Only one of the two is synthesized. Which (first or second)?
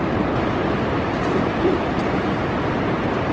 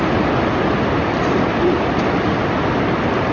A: first